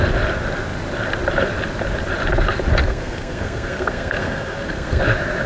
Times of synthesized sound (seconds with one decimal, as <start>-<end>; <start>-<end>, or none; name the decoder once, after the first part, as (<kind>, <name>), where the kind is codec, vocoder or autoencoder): 2.8-5.0 (codec, SNAC)